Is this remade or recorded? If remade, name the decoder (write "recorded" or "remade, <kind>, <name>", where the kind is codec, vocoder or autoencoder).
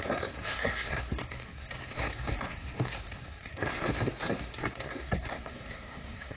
remade, codec, SNAC